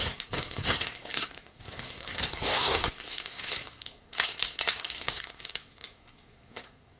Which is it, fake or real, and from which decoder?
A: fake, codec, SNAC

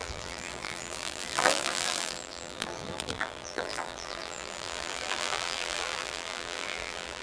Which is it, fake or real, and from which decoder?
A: fake, vocoder, BigVGAN v2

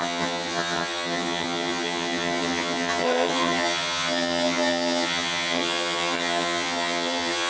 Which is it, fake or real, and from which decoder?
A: fake, vocoder, HiFi-GAN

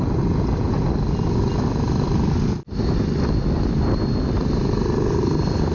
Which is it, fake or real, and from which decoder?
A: real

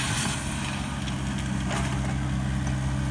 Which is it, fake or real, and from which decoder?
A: real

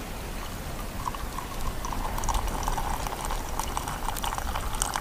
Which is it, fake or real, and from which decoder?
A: real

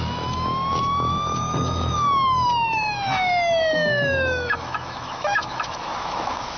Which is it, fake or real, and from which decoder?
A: fake, autoencoder, DAC-VAE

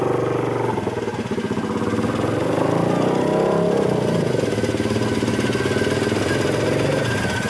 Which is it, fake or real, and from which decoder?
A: real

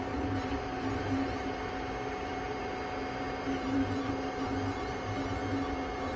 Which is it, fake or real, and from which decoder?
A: real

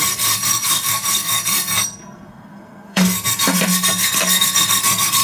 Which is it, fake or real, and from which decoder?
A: fake, codec, SNAC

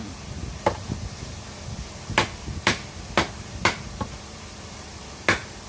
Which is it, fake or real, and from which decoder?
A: fake, vocoder, BigVGAN v2